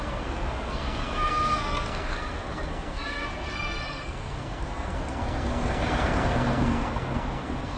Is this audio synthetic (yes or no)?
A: yes